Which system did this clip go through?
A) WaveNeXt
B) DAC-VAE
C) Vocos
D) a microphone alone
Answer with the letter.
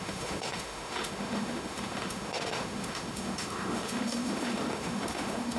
B